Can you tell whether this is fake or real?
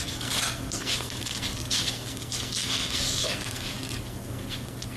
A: fake